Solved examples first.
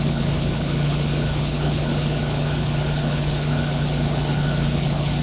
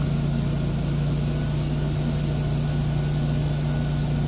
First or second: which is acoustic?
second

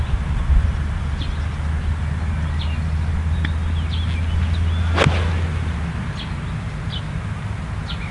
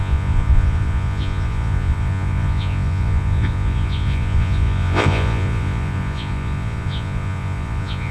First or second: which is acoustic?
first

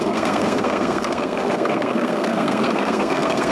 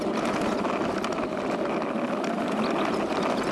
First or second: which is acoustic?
second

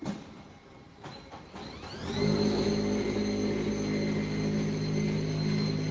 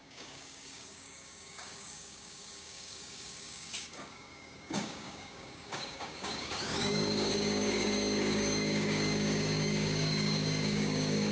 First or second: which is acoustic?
first